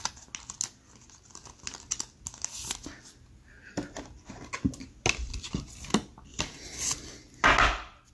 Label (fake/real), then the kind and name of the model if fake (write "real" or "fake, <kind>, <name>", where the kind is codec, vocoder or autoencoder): real